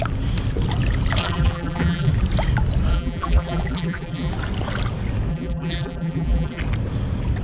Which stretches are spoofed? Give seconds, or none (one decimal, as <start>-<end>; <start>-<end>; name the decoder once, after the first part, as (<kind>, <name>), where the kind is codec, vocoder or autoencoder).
1.2-2.1 (vocoder, BigVGAN v2); 2.9-4.3; 5.3-6.6